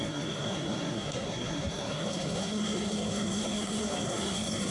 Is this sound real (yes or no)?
no